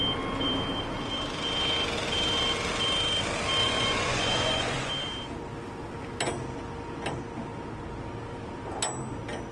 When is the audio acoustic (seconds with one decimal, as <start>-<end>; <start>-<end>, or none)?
0.0-3.6; 4.9-9.5